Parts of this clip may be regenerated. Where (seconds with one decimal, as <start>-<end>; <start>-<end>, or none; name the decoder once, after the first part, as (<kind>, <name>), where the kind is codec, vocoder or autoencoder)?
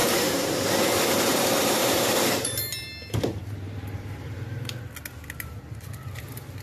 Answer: 0.0-0.5 (vocoder, BigVGAN v2); 1.3-4.8